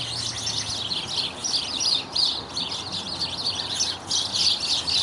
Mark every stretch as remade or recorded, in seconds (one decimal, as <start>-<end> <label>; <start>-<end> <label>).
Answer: 0.0-5.0 recorded